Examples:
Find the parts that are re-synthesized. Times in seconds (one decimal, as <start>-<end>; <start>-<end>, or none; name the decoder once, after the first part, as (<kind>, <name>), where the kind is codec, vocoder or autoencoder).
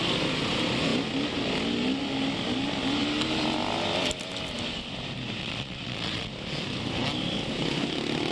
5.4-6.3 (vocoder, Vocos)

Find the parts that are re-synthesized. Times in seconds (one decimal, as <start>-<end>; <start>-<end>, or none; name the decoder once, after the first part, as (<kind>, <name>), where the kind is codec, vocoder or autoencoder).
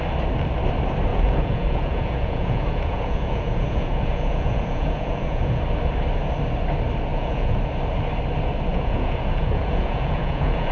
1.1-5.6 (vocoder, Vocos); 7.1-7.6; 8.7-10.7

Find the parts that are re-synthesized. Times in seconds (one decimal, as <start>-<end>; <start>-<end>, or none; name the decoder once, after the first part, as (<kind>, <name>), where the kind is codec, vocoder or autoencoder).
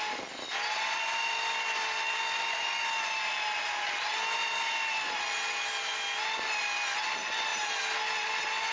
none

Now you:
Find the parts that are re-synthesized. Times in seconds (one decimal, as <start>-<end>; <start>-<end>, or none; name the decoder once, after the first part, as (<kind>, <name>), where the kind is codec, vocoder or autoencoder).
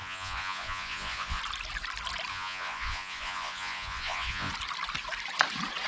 0.0-1.4 (vocoder, Vocos); 2.3-4.5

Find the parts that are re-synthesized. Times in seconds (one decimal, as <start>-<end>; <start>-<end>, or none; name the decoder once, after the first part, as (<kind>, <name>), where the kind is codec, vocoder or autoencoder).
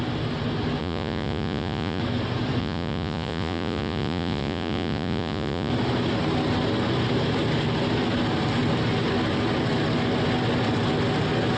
0.8-2.0 (vocoder, Vocos); 2.6-5.7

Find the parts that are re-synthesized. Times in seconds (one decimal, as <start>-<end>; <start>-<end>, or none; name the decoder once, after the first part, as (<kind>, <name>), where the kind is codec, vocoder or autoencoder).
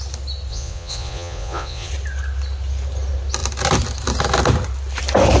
0.5-1.9 (vocoder, Vocos)